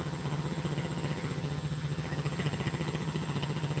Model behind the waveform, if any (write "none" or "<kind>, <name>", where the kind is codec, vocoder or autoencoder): vocoder, HiFi-GAN